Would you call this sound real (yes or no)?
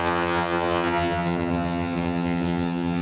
no